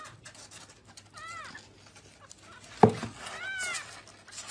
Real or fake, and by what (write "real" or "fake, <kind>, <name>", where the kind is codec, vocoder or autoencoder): real